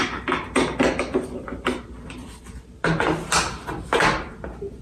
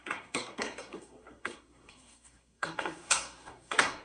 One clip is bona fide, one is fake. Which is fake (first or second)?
second